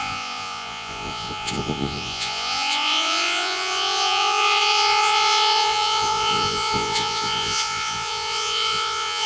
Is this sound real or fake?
fake